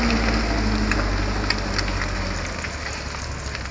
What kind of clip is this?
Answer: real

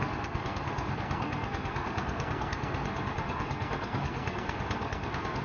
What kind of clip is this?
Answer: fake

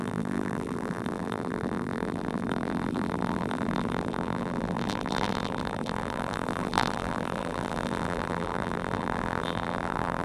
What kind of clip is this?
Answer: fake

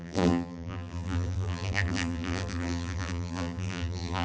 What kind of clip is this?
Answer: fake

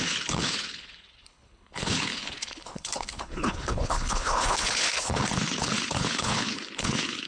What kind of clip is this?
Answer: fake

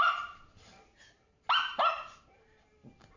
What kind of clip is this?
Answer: real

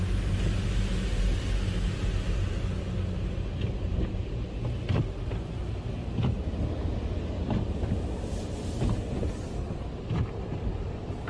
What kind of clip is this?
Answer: real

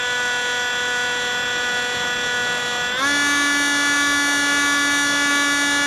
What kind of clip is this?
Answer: real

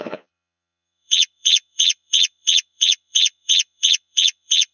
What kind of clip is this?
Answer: fake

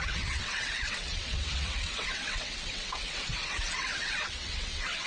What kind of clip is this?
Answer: fake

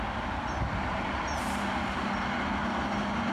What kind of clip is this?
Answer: real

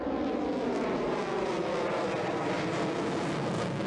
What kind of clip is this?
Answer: real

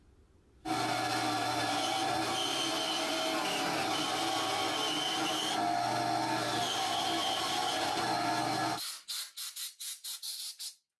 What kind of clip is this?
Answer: real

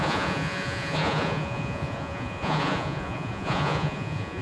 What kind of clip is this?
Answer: fake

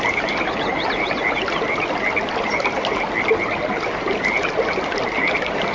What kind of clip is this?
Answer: real